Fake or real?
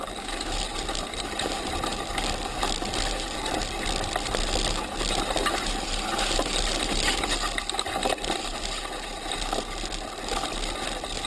real